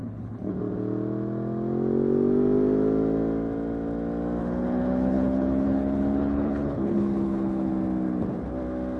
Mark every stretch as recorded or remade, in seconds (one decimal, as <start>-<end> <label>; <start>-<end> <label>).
0.0-0.5 remade; 0.5-4.4 recorded; 4.4-7.7 remade; 7.7-9.0 recorded